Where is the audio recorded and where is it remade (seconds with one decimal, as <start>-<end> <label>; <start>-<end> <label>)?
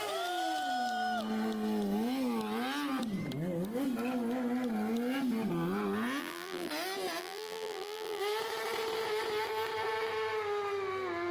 0.0-6.2 recorded; 6.2-6.7 remade; 6.7-7.2 recorded; 7.2-8.2 remade; 8.2-11.3 recorded